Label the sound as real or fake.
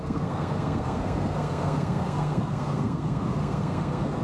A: fake